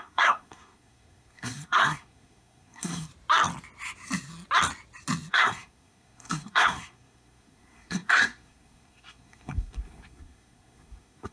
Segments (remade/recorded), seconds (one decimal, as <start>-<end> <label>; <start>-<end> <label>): 0.0-3.1 remade; 3.1-5.3 recorded; 5.3-11.3 remade